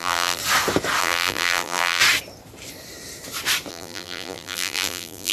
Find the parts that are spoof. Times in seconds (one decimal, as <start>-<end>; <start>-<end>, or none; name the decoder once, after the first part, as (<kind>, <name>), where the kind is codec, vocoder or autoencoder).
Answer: 0.0-0.4 (vocoder, BigVGAN v2); 1.0-2.0; 3.7-5.3